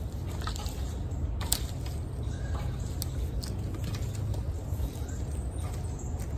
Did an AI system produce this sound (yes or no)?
no